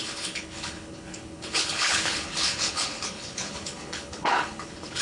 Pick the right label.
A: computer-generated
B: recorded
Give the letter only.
A